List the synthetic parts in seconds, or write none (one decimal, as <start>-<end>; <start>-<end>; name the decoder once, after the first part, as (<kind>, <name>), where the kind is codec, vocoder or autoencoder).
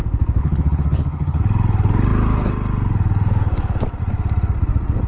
0.4-1.4 (vocoder, HiFi-GAN)